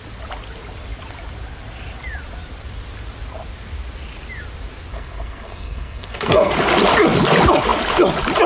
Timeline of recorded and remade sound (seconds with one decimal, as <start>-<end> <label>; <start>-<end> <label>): 0.0-4.9 recorded; 4.9-6.5 remade; 6.5-8.5 recorded